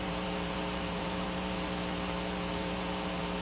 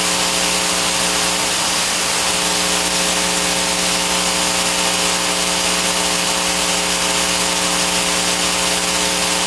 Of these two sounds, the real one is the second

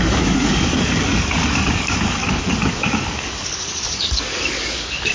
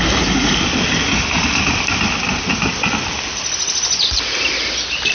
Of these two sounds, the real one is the second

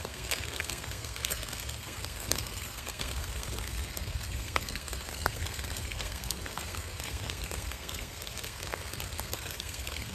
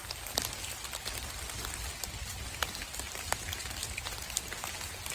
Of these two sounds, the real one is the second